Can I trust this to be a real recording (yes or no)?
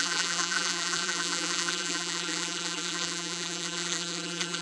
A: no